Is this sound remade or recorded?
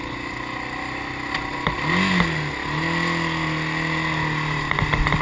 recorded